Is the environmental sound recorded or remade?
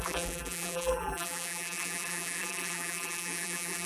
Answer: remade